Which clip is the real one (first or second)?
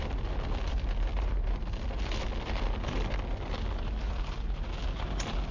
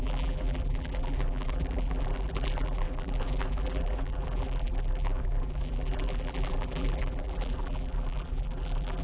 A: first